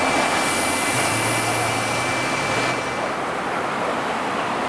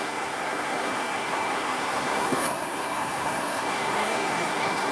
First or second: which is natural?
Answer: first